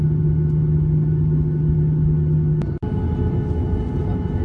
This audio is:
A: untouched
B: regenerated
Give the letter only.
A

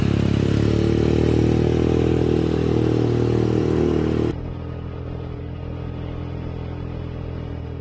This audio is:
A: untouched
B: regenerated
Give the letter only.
A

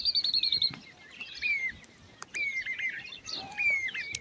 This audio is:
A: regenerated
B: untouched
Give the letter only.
B